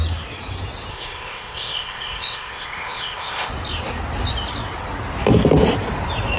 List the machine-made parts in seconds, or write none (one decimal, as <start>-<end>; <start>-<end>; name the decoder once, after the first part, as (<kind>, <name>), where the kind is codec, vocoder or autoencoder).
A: 0.9-3.5 (codec, ZipCodec)